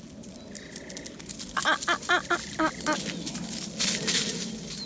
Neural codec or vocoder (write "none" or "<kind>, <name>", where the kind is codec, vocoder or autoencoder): none